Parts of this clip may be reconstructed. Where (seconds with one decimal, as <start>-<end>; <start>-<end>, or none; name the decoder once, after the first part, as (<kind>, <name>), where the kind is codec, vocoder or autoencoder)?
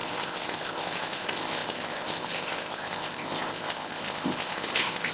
0.0-5.1 (codec, ZipCodec)